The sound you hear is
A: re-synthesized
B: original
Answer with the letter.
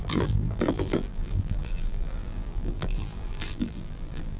A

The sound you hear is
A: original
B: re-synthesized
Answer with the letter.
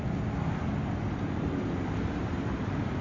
A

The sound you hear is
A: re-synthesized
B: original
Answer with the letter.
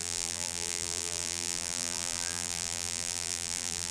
A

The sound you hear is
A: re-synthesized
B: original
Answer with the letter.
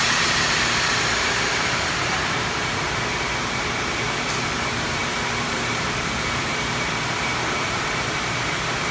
A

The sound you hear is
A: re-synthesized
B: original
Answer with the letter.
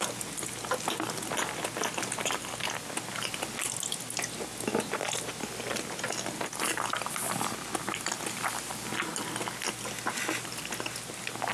B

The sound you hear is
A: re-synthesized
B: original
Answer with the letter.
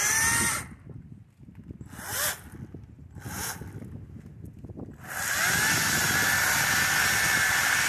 B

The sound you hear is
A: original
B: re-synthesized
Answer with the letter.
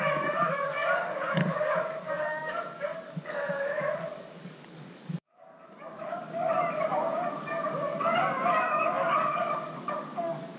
B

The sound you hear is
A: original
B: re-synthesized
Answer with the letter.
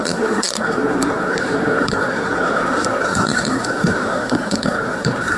B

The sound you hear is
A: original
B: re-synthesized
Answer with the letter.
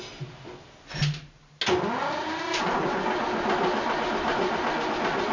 A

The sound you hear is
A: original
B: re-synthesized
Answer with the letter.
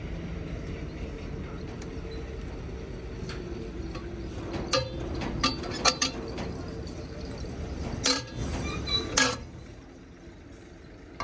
A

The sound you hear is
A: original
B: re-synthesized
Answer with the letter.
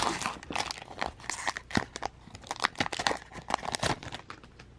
A